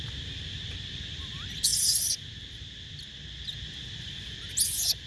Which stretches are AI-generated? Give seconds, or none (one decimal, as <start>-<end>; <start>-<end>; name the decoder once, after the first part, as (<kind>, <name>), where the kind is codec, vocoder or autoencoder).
none